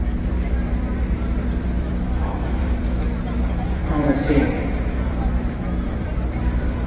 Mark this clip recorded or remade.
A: remade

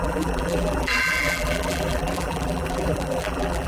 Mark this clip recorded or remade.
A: remade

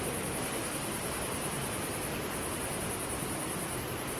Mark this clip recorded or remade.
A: remade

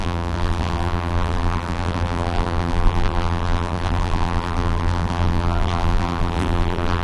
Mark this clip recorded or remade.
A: remade